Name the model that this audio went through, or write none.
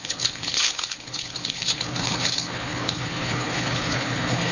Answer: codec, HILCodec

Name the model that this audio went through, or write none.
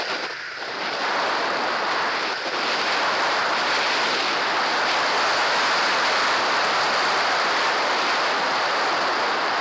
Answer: none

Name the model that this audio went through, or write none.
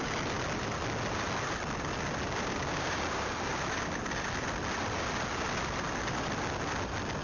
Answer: none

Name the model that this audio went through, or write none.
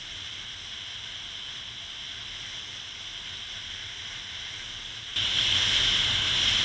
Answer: none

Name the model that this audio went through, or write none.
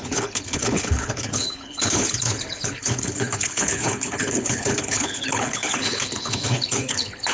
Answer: codec, HILCodec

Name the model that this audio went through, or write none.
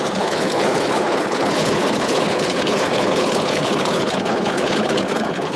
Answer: codec, HILCodec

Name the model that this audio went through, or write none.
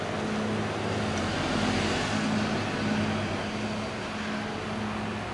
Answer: none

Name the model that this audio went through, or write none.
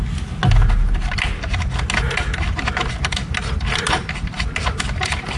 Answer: none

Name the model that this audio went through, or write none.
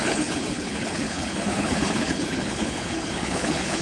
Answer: codec, HILCodec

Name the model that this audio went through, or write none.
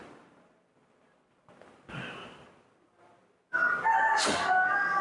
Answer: none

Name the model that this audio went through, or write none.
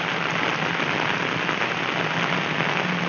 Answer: none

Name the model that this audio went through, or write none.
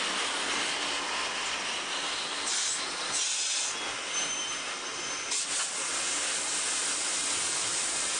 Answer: none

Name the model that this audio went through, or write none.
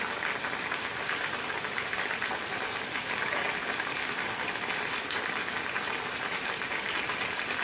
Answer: none